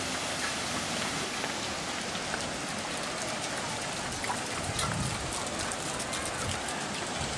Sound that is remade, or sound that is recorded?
recorded